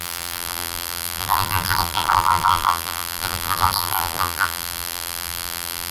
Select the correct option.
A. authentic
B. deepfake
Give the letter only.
B